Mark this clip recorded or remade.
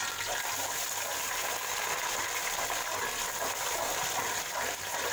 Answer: recorded